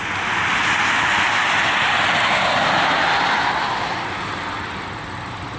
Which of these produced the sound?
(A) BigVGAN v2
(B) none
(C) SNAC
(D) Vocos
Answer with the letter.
B